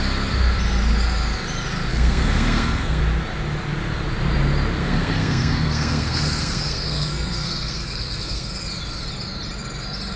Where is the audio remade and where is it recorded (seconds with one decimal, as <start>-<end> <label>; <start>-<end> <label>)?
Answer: 0.0-1.9 recorded; 1.9-3.0 remade; 3.0-4.8 recorded; 4.8-8.5 remade; 8.5-10.2 recorded